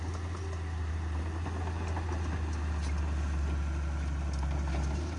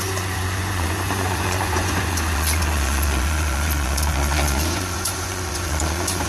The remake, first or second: second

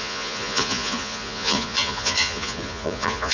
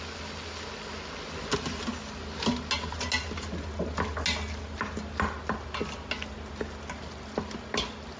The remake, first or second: first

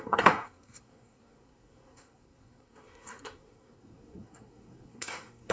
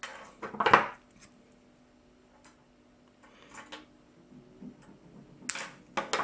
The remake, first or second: first